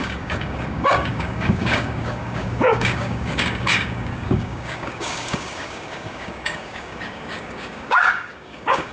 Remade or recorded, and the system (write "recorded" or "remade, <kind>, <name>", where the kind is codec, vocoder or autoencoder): remade, codec, DAC